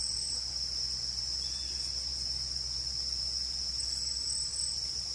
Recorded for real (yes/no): yes